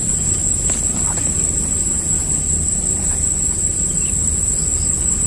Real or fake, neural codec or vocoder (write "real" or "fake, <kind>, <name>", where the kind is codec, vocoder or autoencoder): real